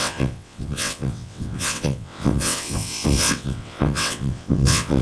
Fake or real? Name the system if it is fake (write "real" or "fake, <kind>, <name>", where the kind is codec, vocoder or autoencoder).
fake, vocoder, WaveNeXt